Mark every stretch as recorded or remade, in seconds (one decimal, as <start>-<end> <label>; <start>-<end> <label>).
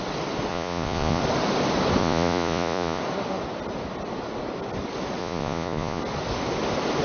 0.0-0.5 recorded; 0.5-1.2 remade; 1.2-2.0 recorded; 2.0-3.0 remade; 3.0-5.2 recorded; 5.2-6.0 remade; 6.0-7.0 recorded